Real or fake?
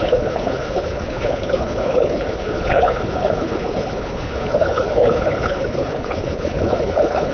fake